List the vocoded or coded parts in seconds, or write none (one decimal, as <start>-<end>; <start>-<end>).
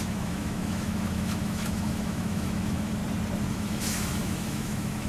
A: 0.0-3.0; 3.5-5.1